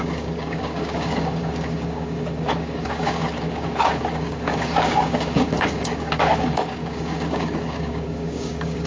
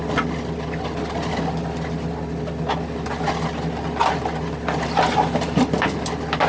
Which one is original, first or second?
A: second